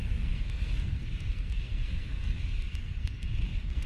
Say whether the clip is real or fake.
fake